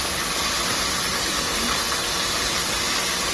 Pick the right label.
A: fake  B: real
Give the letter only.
B